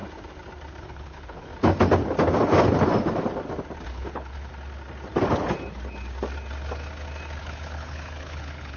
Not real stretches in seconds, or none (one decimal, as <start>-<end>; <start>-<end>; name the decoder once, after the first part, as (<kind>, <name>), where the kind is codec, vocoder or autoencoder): 0.8-1.5 (codec, HILCodec); 3.9-4.5; 7.4-8.8